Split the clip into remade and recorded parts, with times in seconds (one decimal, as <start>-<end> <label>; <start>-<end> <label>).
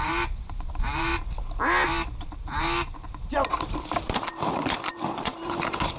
0.0-1.1 remade; 1.1-3.6 recorded; 3.6-6.0 remade